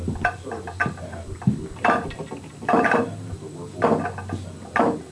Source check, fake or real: fake